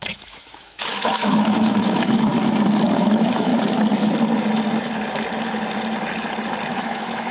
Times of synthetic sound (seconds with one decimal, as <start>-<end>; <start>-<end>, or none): 0.0-2.3; 2.9-3.5; 6.7-7.3